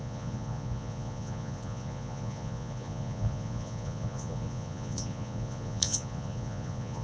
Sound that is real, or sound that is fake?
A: fake